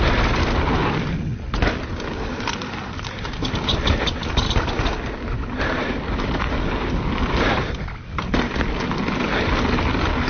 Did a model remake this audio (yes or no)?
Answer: no